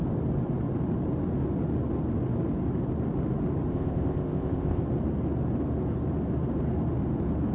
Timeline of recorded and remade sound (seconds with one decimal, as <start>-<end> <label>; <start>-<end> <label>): 0.0-3.7 recorded; 3.7-4.8 remade; 4.8-7.5 recorded